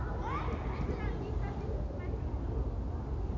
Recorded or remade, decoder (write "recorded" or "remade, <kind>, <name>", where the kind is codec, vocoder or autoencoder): recorded